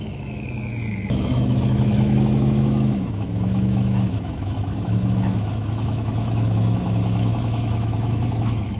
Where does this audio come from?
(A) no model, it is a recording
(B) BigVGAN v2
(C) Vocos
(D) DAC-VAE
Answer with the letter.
D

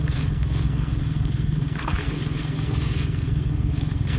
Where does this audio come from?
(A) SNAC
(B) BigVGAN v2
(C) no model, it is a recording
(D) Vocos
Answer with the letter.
A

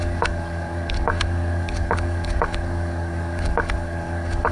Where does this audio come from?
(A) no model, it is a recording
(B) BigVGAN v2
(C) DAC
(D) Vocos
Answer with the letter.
C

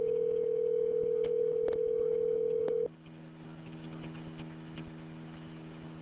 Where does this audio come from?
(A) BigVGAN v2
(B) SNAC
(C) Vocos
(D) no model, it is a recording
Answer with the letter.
D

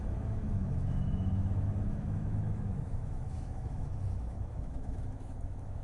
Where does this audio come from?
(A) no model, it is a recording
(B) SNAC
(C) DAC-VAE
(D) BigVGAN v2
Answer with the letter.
C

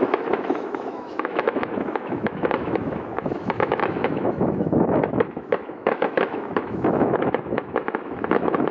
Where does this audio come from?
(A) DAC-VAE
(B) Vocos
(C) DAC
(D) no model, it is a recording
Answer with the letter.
A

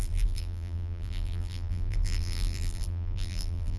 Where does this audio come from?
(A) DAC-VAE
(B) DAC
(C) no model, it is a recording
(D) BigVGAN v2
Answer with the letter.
D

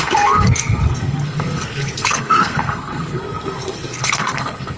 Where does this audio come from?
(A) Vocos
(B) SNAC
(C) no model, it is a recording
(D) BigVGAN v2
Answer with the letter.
B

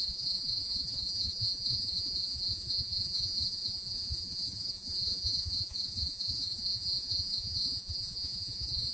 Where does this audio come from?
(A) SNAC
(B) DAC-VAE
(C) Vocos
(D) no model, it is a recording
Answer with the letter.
C